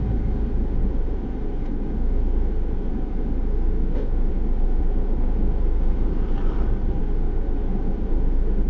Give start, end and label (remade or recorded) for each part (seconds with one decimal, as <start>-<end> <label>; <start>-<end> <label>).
0.0-6.1 remade; 6.1-7.0 recorded; 7.0-8.7 remade